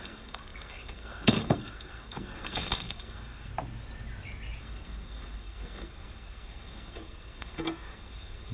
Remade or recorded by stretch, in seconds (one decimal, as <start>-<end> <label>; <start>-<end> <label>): 0.0-3.5 remade; 3.5-4.6 recorded; 4.6-8.5 remade